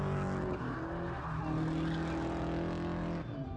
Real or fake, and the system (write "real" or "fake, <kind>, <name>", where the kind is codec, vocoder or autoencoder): real